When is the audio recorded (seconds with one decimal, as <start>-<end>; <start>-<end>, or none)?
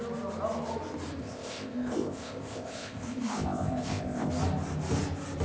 0.0-1.2; 4.3-5.4